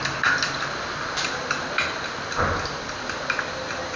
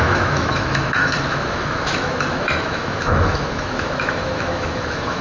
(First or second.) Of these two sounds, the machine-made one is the second